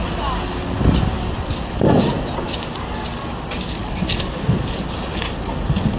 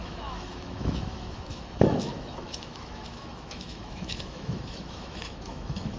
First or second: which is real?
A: first